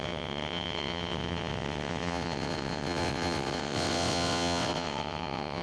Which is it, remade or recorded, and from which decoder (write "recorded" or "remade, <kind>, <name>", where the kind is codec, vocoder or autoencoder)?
remade, vocoder, WaveNeXt